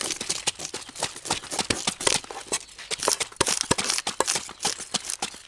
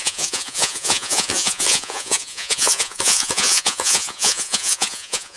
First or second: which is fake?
second